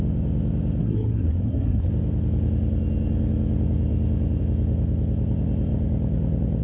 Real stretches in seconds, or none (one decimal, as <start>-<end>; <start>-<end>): 0.0-0.8; 1.9-6.6